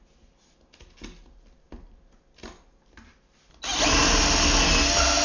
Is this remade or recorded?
recorded